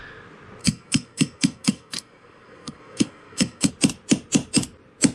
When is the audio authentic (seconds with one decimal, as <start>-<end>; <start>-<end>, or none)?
0.0-0.6; 3.7-5.1